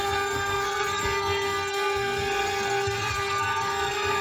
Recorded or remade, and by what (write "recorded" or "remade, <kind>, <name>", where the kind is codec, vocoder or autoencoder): remade, codec, SNAC